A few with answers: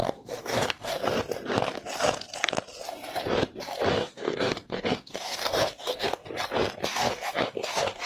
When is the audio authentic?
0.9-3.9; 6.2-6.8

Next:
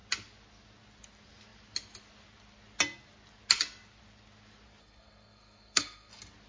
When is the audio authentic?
0.0-4.8; 6.1-6.5

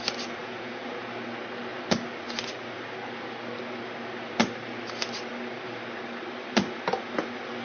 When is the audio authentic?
0.0-0.4; 0.9-7.6

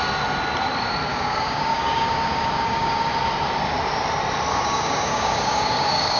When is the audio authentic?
0.0-1.1; 3.1-4.5

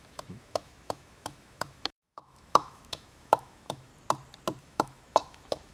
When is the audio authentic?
3.9-4.6

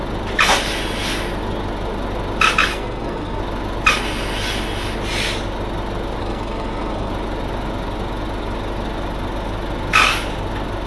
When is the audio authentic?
0.0-2.7; 3.4-6.2; 7.1-10.9

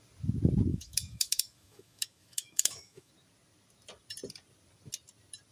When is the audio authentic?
0.0-0.7; 3.1-5.5

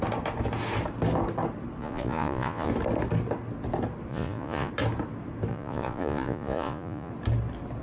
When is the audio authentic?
0.0-1.8; 2.7-4.1; 4.7-5.5; 7.1-7.8